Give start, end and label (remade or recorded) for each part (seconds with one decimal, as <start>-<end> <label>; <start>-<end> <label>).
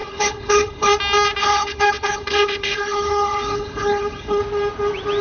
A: 0.0-0.9 remade; 0.9-1.4 recorded; 1.4-4.4 remade; 4.4-5.2 recorded